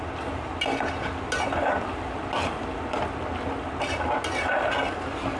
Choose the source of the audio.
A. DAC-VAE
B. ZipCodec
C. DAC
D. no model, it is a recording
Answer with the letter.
D